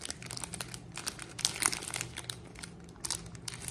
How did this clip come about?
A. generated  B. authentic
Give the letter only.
B